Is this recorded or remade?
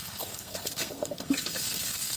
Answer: remade